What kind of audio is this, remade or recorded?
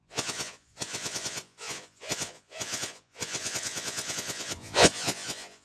remade